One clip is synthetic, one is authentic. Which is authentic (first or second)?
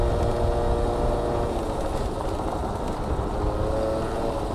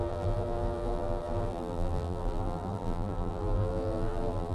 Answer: first